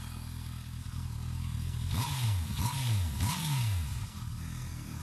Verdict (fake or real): fake